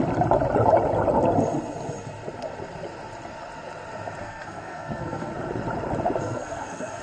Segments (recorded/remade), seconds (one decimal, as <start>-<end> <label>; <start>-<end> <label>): 0.0-4.2 recorded; 4.2-5.3 remade; 5.3-6.2 recorded; 6.2-7.0 remade